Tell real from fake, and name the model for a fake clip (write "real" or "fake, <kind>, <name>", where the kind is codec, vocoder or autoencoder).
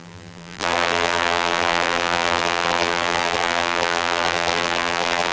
fake, vocoder, BigVGAN v2